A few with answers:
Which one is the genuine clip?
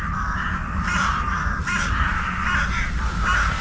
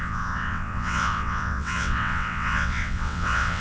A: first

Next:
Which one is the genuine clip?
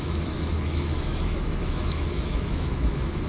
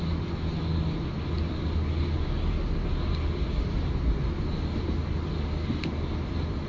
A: second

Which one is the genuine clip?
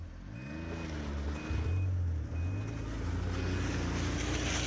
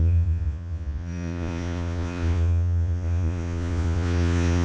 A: first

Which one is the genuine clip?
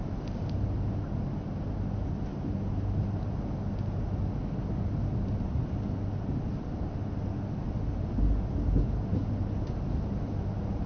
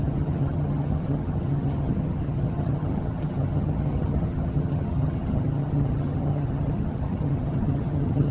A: first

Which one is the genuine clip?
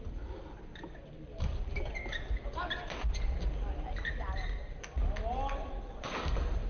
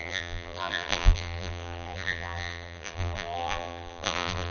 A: first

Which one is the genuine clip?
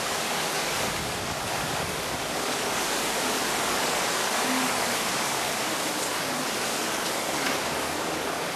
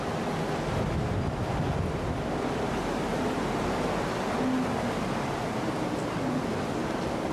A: second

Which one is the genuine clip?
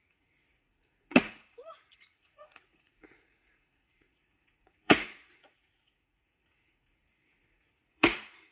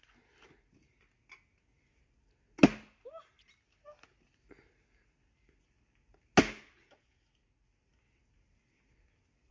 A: second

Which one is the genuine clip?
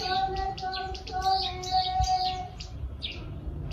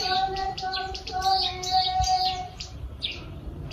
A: first